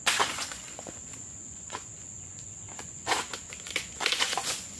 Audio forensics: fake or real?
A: fake